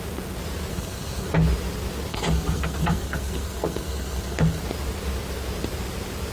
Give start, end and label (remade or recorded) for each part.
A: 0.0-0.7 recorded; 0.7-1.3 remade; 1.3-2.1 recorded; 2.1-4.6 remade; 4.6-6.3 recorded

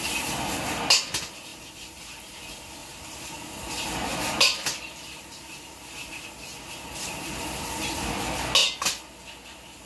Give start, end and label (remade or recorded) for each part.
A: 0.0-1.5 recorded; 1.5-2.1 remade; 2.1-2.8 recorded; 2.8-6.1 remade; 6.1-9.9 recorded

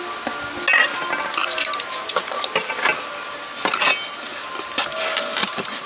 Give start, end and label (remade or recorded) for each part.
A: 0.0-1.4 recorded; 1.4-2.7 remade; 2.7-5.4 recorded; 5.4-5.9 remade

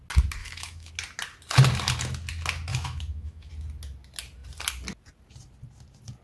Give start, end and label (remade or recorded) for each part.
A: 0.0-0.4 recorded; 0.4-0.9 remade; 0.9-2.7 recorded; 2.7-3.5 remade; 3.5-6.2 recorded